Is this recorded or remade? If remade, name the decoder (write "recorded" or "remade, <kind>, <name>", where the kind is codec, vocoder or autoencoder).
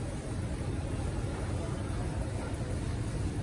recorded